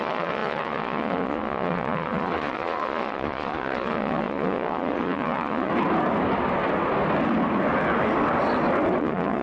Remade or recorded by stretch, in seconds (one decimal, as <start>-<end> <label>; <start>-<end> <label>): 0.0-5.7 remade; 5.7-9.0 recorded; 9.0-9.4 remade